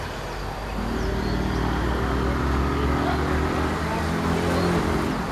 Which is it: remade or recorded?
recorded